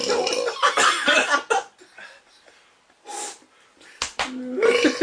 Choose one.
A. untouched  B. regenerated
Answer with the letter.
A